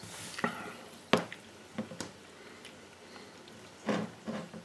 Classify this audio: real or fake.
real